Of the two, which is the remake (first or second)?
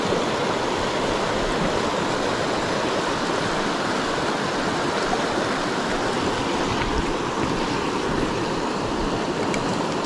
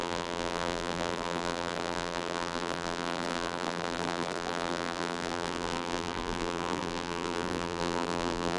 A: second